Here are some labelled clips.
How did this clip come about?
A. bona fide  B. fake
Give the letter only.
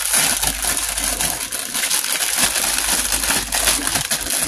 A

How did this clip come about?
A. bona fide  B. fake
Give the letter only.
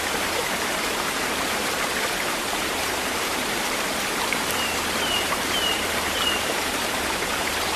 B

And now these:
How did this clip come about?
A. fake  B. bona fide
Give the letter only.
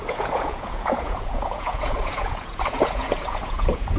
A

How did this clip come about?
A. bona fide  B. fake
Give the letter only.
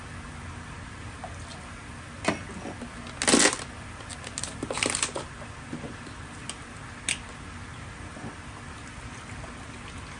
A